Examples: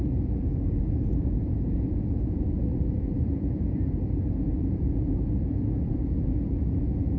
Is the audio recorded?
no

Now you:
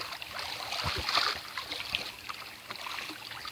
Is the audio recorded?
yes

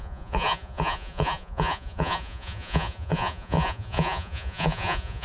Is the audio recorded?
no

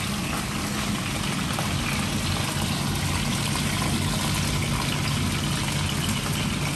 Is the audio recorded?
yes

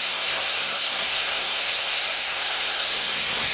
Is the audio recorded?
no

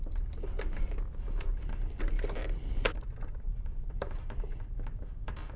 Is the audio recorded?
no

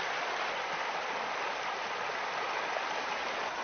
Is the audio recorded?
yes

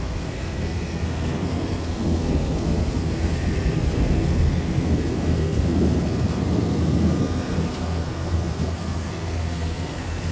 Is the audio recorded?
no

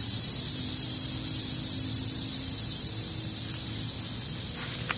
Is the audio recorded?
no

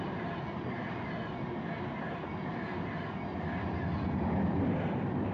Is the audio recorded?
yes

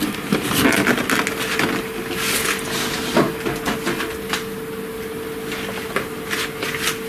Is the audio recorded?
yes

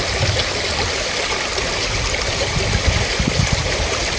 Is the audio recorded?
yes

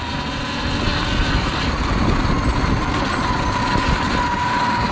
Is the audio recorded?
yes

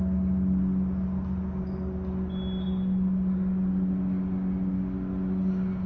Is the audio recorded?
yes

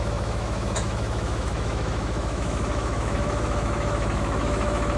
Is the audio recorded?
no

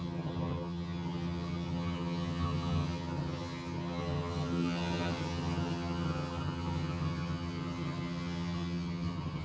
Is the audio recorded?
no